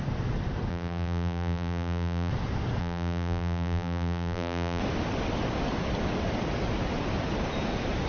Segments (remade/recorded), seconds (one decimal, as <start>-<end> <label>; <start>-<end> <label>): 0.0-0.7 recorded; 0.7-2.3 remade; 2.3-2.8 recorded; 2.8-4.8 remade; 4.8-8.1 recorded